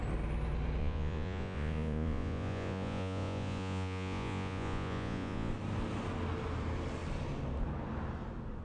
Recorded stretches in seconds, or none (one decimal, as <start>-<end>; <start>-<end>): 0.0-0.8; 5.5-8.6